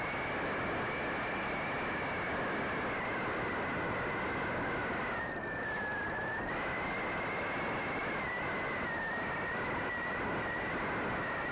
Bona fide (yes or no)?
yes